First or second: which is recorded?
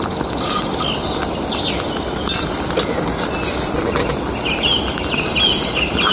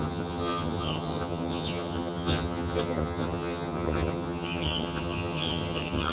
first